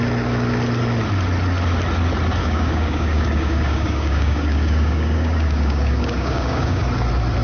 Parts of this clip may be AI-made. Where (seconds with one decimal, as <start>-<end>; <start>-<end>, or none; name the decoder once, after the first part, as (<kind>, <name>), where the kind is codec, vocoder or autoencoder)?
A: 2.4-6.8 (codec, DAC)